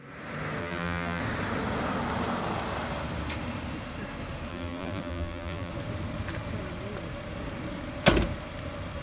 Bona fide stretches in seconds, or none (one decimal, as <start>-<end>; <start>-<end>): 0.0-0.6; 1.2-4.5; 5.7-9.0